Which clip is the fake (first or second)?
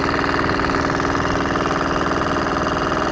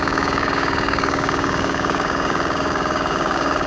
second